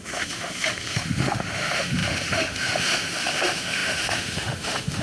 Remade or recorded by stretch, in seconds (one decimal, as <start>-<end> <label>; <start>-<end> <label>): 0.0-5.0 remade